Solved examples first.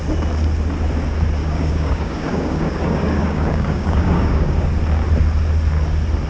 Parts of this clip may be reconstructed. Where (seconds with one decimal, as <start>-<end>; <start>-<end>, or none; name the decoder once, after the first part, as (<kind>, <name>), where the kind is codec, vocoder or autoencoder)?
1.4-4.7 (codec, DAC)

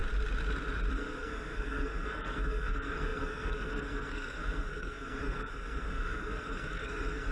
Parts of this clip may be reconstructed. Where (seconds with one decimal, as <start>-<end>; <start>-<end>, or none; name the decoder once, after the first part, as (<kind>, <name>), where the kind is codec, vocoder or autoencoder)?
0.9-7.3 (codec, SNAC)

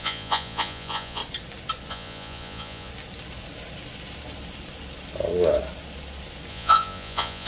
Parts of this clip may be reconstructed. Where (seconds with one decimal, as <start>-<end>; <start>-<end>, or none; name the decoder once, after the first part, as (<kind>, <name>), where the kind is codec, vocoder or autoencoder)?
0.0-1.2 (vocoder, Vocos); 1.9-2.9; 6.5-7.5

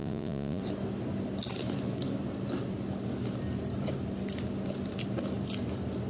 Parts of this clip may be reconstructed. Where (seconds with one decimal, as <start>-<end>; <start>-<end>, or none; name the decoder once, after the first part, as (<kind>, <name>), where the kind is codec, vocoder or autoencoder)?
0.0-0.6 (vocoder, Vocos)

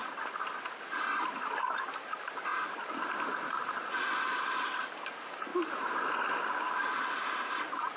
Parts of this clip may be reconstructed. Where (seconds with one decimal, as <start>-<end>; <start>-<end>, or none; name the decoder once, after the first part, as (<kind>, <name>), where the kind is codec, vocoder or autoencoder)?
none

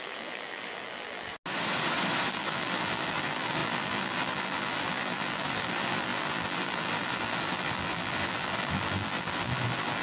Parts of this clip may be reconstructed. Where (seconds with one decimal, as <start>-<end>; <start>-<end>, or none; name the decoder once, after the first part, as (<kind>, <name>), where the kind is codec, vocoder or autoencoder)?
0.0-1.3 (vocoder, BigVGAN v2); 2.3-10.0

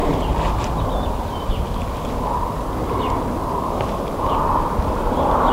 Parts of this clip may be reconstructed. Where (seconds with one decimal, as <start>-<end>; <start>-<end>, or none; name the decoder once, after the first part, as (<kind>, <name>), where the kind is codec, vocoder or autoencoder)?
none